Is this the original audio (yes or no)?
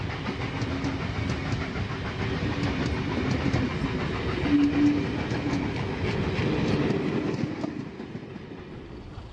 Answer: yes